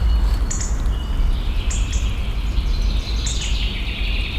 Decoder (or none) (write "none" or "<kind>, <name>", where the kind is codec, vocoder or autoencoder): none